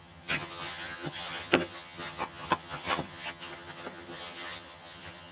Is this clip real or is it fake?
fake